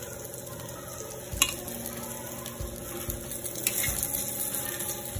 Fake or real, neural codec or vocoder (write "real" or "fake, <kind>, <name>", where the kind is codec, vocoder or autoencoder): real